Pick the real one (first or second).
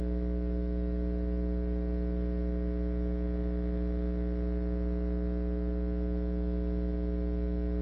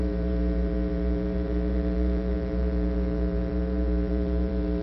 first